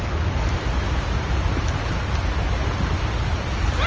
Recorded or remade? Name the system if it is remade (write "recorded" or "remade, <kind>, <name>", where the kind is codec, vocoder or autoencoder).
recorded